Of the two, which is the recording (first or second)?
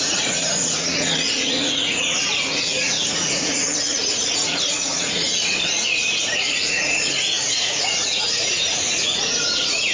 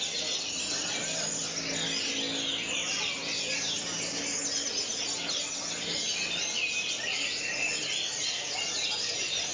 second